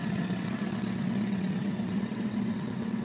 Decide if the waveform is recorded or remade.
remade